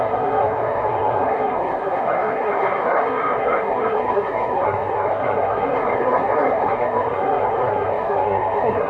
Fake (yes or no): yes